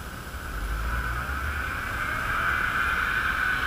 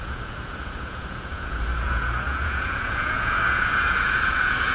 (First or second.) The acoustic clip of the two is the first